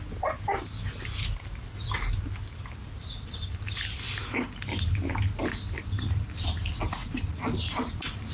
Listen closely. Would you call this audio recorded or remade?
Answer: recorded